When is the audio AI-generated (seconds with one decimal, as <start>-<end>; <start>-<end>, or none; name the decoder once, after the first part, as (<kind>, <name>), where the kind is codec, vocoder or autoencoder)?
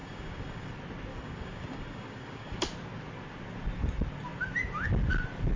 0.0-0.7 (codec, DAC); 1.1-2.6